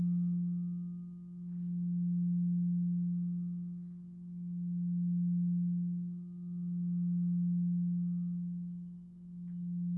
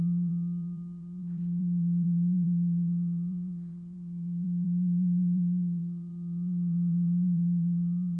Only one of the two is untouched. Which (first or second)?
first